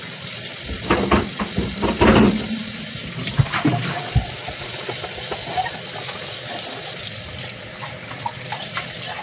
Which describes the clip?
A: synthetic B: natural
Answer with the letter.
B